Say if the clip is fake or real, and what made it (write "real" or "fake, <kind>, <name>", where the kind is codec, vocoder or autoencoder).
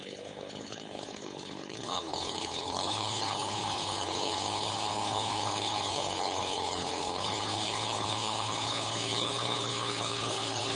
fake, codec, HILCodec